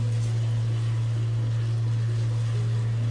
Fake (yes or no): no